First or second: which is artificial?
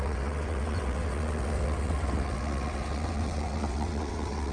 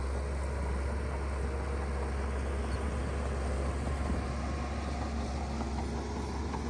first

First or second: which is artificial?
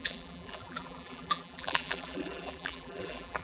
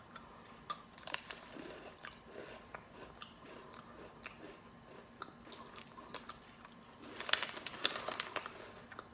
first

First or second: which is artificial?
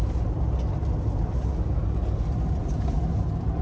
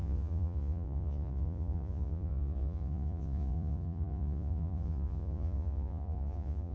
second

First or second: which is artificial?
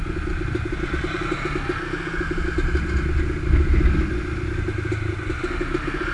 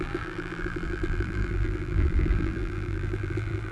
second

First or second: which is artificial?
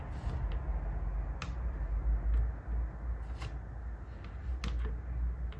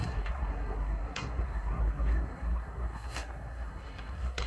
second